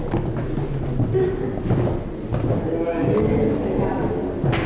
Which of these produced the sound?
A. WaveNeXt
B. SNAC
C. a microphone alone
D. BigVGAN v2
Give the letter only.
C